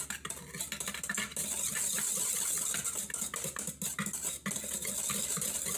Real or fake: real